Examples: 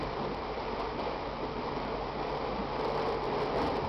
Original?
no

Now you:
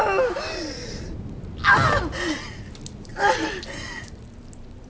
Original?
yes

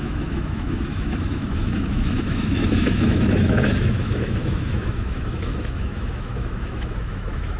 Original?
no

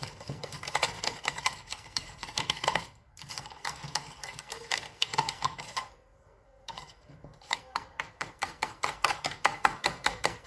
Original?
no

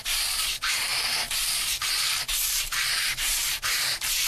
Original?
no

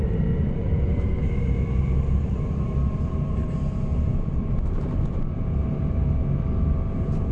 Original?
no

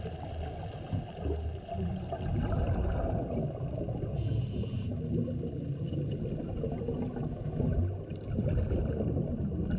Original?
yes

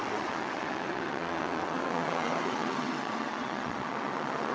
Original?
no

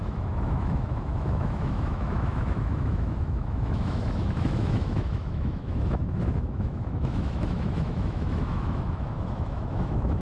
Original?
no